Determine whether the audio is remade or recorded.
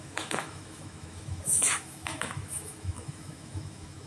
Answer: remade